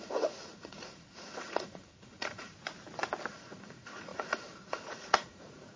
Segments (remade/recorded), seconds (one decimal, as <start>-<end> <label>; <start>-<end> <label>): 0.0-2.5 remade; 2.5-3.3 recorded; 3.3-5.8 remade